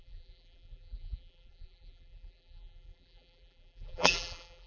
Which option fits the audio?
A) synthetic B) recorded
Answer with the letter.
A